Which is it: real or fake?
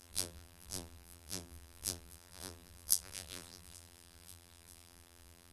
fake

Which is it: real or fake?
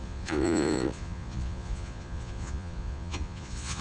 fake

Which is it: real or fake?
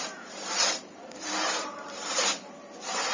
fake